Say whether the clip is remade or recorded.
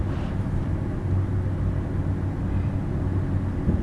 recorded